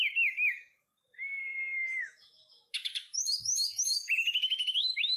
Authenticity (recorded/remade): remade